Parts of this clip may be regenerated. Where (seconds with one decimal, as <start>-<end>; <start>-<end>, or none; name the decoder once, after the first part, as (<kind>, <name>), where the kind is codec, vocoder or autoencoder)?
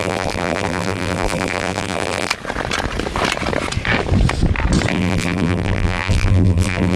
0.0-2.3 (vocoder, BigVGAN v2); 4.9-7.0